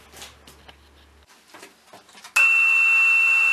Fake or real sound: real